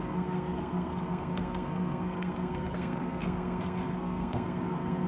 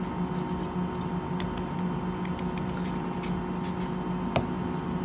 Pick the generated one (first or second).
first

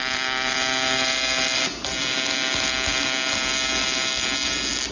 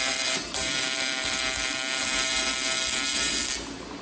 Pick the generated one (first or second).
second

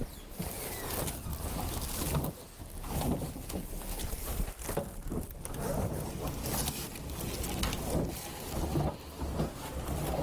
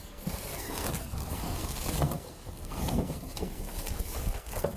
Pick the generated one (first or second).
second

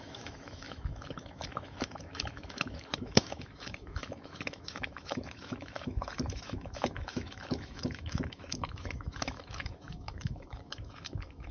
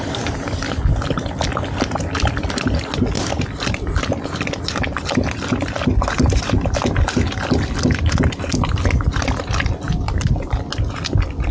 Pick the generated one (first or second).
first